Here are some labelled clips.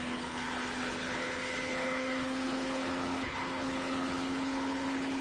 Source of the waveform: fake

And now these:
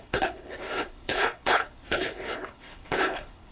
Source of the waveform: fake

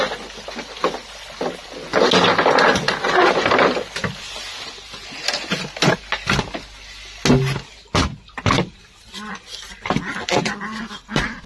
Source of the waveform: real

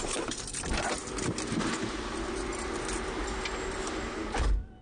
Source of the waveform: real